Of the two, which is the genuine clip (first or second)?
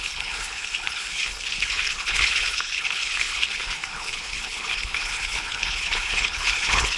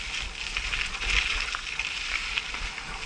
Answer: second